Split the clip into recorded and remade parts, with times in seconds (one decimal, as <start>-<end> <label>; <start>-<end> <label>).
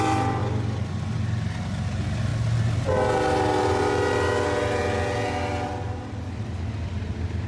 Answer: 0.0-7.5 recorded